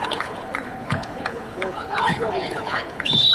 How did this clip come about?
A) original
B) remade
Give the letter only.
B